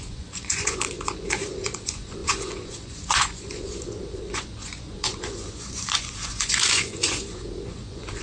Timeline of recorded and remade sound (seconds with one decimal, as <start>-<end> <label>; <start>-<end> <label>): 0.0-8.2 remade